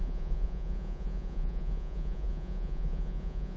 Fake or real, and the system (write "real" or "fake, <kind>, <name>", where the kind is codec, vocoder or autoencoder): fake, vocoder, Vocos